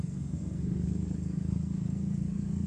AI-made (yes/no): yes